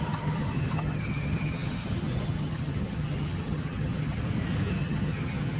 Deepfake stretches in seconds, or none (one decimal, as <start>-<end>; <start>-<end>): 0.0-4.2; 4.8-5.6